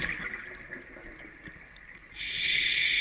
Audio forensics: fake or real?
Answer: real